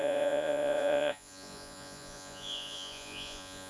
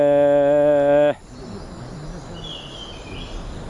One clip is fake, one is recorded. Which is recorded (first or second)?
second